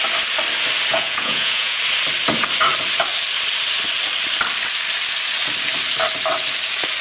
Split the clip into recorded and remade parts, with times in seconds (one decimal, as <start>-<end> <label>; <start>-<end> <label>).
0.0-0.9 recorded; 0.9-1.8 remade; 1.8-7.0 recorded